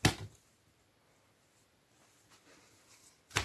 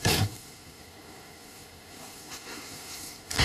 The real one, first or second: first